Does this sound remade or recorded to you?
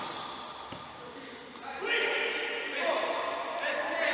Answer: recorded